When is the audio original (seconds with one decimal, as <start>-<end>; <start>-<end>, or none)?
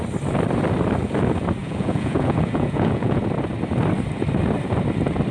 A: 0.0-1.6; 3.2-5.3